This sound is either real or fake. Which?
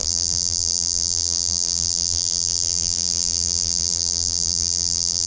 fake